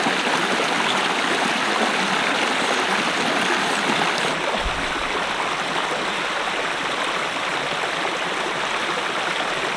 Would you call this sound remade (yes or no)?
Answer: no